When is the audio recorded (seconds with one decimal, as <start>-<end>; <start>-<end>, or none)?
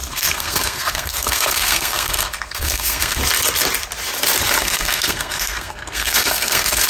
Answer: 3.2-4.6